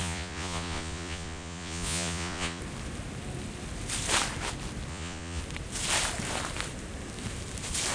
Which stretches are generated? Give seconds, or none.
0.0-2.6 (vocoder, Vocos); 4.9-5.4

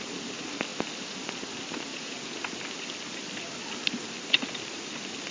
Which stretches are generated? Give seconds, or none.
1.9-2.4 (vocoder, Vocos)

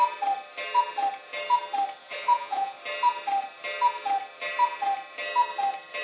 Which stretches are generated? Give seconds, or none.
2.0-2.8 (vocoder, Vocos)